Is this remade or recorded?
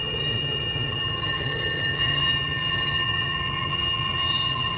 remade